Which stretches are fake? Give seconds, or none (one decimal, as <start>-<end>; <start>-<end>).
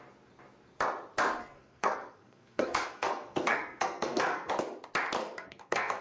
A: 1.4-4.5; 5.2-6.0